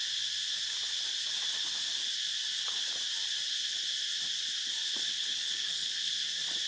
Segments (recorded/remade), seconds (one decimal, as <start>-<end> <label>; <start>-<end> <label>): 0.0-5.0 recorded; 5.0-6.3 remade; 6.3-6.7 recorded